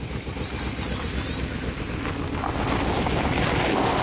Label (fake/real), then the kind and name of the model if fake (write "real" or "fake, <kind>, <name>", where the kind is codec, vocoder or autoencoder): real